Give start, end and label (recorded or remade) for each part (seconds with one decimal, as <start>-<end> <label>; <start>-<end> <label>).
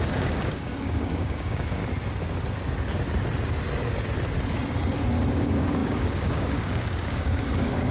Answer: 0.0-1.8 remade; 1.8-5.3 recorded; 5.3-7.9 remade